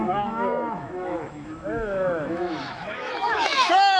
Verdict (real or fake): fake